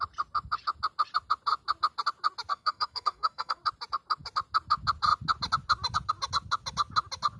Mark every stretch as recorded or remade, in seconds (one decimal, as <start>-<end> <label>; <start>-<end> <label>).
0.0-2.5 recorded; 2.5-3.6 remade; 3.6-7.4 recorded